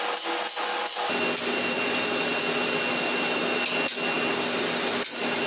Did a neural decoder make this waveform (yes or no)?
no